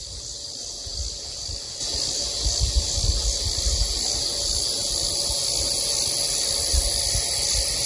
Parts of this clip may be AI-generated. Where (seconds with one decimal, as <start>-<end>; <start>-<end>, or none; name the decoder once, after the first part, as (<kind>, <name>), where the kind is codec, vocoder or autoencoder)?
none